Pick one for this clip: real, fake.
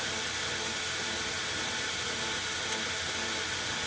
real